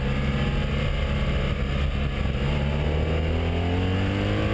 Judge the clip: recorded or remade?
recorded